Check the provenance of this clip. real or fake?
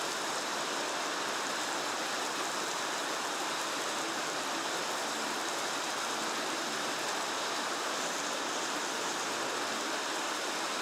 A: real